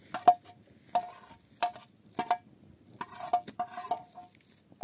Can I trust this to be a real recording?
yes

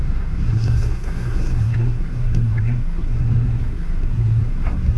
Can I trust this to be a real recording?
no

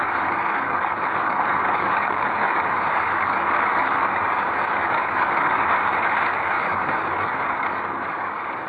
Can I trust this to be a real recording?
no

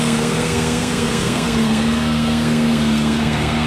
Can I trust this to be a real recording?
no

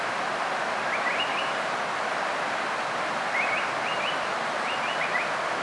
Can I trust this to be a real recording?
no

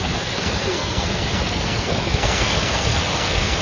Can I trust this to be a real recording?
no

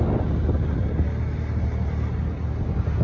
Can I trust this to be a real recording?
yes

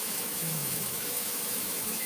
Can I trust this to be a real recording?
no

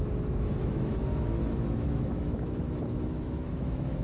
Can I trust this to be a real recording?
no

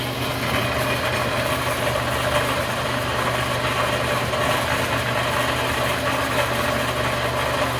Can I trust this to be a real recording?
yes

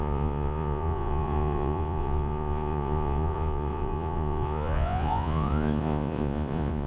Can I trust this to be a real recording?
no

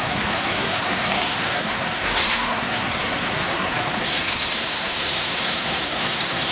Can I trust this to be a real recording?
no